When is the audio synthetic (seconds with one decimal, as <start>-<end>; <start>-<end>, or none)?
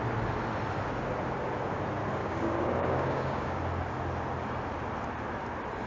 2.2-3.6